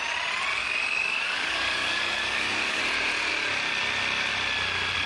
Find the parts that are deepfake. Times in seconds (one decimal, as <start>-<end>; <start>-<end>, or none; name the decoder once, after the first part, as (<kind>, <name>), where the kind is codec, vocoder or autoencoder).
0.5-2.8 (codec, DAC)